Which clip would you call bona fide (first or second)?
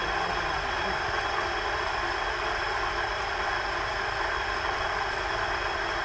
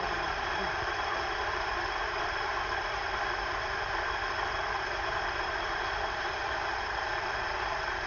first